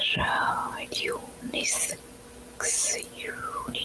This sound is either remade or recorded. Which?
recorded